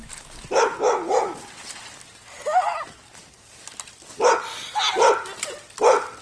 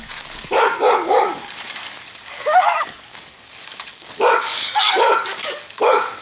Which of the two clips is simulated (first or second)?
second